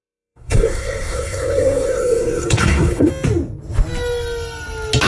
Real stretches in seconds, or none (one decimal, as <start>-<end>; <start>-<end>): 3.1-5.1